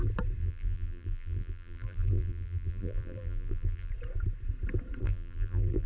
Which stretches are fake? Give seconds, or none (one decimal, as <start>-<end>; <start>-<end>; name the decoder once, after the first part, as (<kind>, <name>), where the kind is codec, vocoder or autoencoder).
0.4-3.9 (vocoder, BigVGAN v2); 5.0-5.9